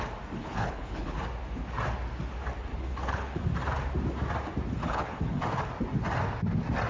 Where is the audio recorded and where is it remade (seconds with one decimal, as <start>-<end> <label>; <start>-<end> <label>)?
0.0-0.4 recorded; 0.4-1.2 remade; 1.2-2.7 recorded; 2.7-3.4 remade; 3.4-4.8 recorded; 4.8-5.4 remade; 5.4-6.9 recorded